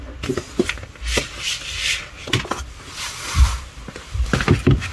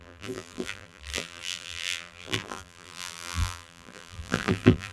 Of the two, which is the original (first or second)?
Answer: first